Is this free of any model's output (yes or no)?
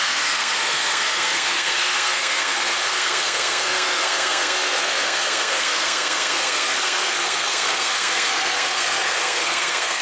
no